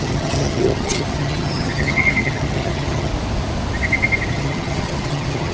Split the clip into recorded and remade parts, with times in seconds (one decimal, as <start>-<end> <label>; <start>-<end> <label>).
0.0-3.1 remade; 3.1-4.3 recorded; 4.3-5.5 remade